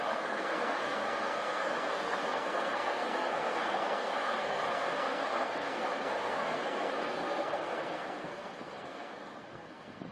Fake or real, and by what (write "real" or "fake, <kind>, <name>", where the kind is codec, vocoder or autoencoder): fake, codec, SNAC